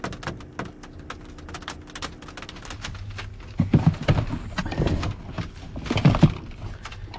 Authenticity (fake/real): real